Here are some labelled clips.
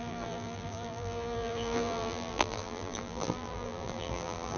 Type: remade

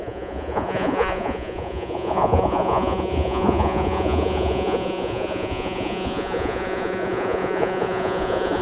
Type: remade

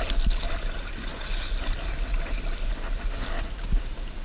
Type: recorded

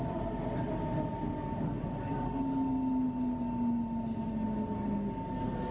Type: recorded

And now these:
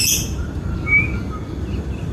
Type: recorded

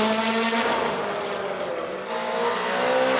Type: recorded